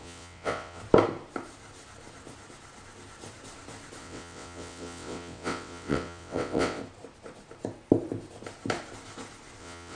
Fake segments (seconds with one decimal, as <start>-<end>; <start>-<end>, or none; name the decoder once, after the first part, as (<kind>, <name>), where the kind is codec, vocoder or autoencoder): 0.0-0.8 (vocoder, WaveNeXt); 4.0-6.8; 9.6-10.0